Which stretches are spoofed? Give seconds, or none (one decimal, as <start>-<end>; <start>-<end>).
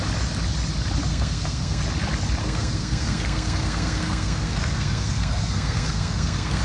1.1-1.8; 2.4-6.6